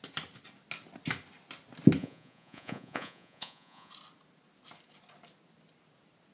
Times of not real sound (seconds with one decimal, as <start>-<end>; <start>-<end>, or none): 2.0-3.9